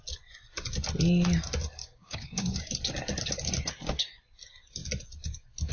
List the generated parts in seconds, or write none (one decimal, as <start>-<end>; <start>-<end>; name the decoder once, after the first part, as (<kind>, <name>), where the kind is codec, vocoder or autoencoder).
1.8-2.8 (codec, DAC)